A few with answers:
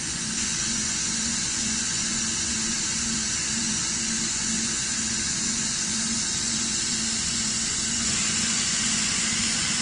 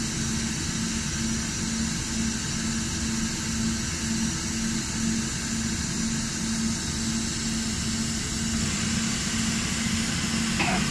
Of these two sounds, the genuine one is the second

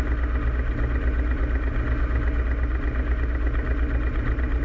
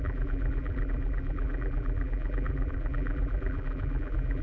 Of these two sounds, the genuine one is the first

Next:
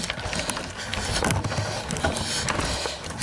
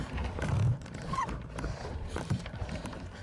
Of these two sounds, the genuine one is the first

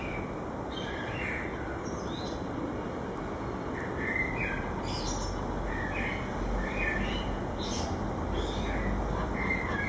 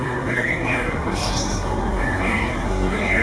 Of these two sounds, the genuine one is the first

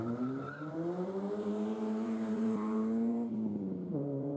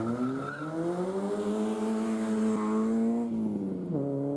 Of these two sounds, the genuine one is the second